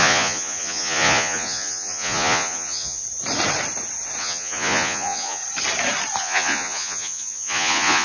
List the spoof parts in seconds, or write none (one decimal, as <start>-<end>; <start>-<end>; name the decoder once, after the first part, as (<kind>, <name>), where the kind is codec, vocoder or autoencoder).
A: 0.0-3.0 (vocoder, Vocos); 4.2-5.4; 6.2-8.0